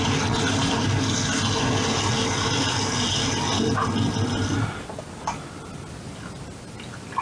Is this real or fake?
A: real